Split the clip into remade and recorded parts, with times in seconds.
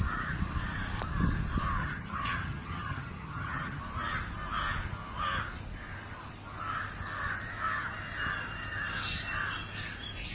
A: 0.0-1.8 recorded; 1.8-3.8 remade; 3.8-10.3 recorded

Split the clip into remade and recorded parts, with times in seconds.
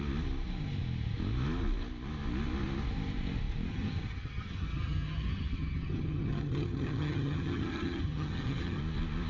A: 0.0-3.7 recorded; 3.7-8.8 remade; 8.8-9.3 recorded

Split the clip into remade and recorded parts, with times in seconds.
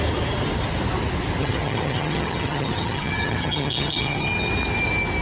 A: 0.0-1.4 recorded; 1.4-4.5 remade; 4.5-5.2 recorded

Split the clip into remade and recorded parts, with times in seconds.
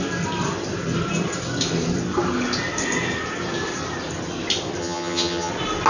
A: 0.0-4.8 recorded; 4.8-5.5 remade; 5.5-5.9 recorded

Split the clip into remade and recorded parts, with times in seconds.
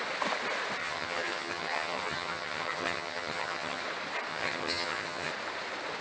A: 0.0-0.8 recorded; 0.8-3.8 remade; 3.8-4.3 recorded; 4.3-5.3 remade; 5.3-6.0 recorded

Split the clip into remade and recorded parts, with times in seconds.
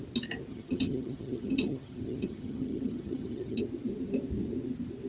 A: 0.0-0.5 recorded; 0.5-3.6 remade; 3.6-5.1 recorded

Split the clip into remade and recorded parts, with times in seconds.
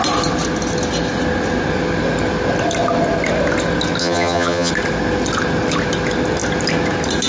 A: 0.0-4.0 recorded; 4.0-4.7 remade; 4.7-7.3 recorded